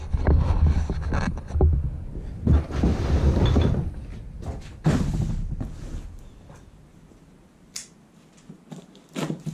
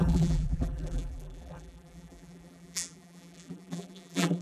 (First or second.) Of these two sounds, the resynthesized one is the second